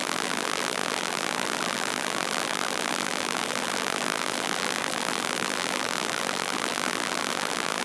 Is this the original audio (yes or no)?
no